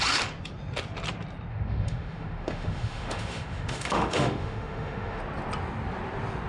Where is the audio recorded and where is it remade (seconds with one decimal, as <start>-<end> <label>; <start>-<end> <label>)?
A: 0.0-1.5 recorded; 1.5-5.2 remade; 5.2-6.5 recorded